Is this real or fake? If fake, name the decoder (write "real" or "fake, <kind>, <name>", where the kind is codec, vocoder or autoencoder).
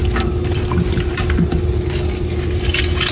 real